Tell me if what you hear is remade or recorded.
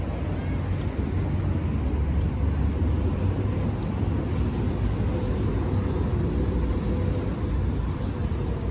recorded